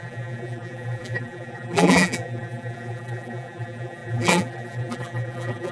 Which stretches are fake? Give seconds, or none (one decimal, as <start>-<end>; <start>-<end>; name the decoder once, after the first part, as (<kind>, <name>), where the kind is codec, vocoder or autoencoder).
0.0-5.7 (vocoder, BigVGAN v2)